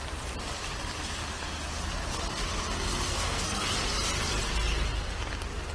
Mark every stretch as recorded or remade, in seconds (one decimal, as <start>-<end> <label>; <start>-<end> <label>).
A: 0.0-3.1 recorded; 3.1-3.6 remade; 3.6-5.7 recorded